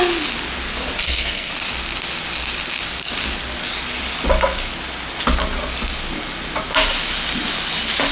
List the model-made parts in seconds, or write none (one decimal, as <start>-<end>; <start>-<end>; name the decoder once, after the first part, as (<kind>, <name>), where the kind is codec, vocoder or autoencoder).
1.0-1.5 (codec, SNAC)